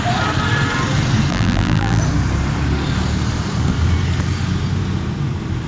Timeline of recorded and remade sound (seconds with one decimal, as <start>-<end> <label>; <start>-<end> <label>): 0.0-1.3 recorded; 1.3-2.0 remade; 2.0-5.7 recorded